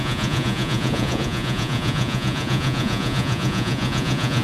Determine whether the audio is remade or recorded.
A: remade